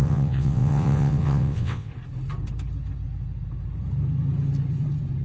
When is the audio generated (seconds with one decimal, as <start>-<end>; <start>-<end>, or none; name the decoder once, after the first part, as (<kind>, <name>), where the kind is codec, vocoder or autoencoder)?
0.0-1.9 (vocoder, WaveNeXt)